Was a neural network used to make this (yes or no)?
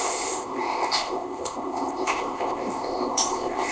yes